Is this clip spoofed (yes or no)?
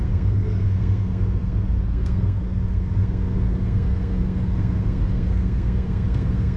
yes